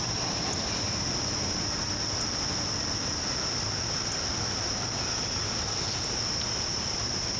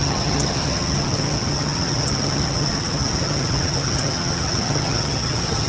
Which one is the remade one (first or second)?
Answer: second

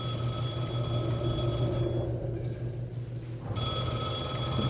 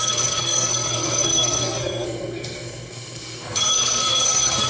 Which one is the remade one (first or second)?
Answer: second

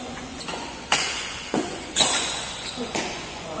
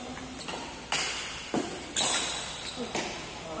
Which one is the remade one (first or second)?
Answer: first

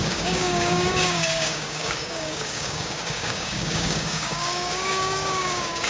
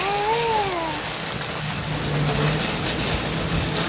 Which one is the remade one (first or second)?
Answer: first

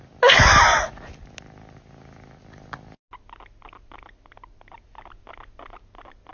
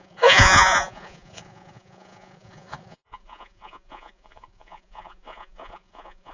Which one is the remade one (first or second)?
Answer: second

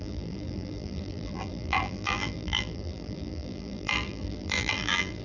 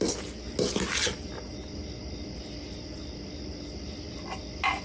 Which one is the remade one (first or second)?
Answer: first